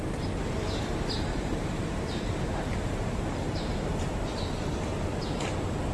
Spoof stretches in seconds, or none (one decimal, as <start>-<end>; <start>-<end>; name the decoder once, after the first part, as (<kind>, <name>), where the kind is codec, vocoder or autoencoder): 1.3-4.8 (vocoder, BigVGAN v2)